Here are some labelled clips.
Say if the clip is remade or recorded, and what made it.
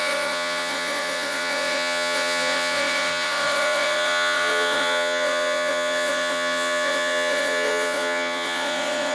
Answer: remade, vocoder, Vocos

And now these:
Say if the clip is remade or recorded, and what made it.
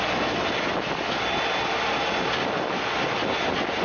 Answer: recorded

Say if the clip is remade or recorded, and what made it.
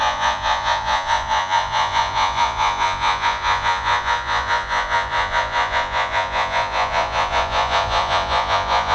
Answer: remade, vocoder, Vocos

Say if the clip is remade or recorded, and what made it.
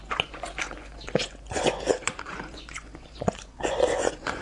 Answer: remade, vocoder, Vocos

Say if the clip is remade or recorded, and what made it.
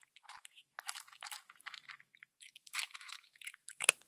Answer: remade, autoencoder, DAC-VAE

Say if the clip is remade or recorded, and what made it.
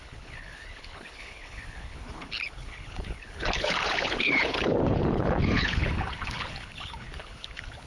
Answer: remade, codec, HILCodec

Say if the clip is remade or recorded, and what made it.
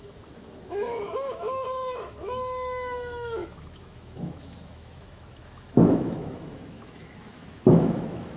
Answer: remade, autoencoder, DAC-VAE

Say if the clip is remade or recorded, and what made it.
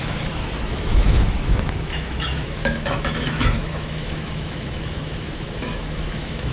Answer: remade, autoencoder, DAC-VAE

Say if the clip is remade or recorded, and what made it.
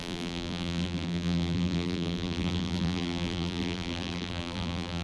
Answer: remade, vocoder, BigVGAN v2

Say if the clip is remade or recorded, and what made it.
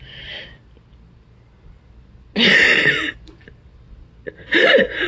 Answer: recorded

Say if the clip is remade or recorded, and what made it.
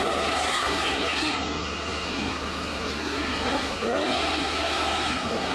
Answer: remade, codec, SNAC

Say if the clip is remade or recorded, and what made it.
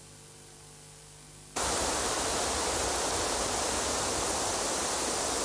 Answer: recorded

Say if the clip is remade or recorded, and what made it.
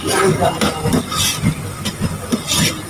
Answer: recorded